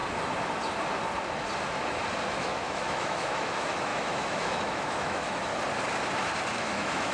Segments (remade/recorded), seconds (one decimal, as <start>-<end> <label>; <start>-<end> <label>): 0.0-2.3 recorded; 2.3-5.5 remade; 5.5-6.6 recorded; 6.6-7.1 remade